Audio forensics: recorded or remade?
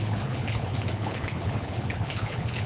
remade